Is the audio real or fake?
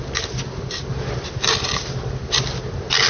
real